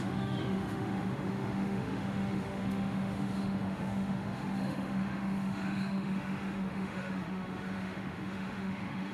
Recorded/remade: remade